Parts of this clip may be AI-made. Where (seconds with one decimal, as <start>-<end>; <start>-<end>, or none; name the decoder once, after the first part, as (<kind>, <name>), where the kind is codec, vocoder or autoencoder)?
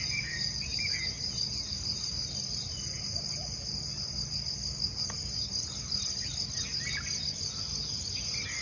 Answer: 0.7-2.7 (vocoder, BigVGAN v2)